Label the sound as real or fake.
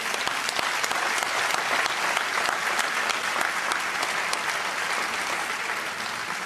real